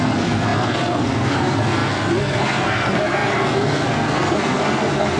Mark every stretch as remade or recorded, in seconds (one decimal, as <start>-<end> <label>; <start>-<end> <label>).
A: 0.0-5.2 remade